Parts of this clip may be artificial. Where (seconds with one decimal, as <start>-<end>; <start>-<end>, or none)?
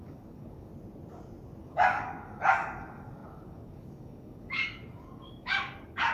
0.0-0.7; 1.6-6.1